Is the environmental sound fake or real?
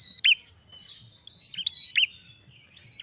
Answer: real